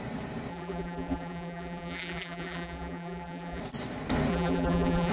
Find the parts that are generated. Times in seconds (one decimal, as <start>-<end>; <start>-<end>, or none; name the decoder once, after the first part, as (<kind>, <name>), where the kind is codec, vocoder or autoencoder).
0.5-3.6 (vocoder, BigVGAN v2); 4.3-5.1